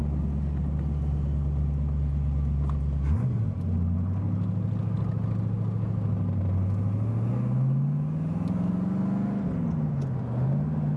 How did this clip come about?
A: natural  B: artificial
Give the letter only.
A